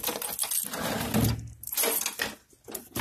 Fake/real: real